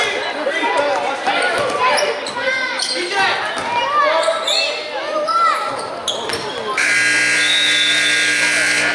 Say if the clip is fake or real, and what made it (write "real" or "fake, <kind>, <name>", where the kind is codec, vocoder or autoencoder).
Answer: real